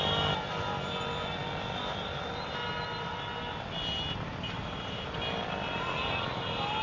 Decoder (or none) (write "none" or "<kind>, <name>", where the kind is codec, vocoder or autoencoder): none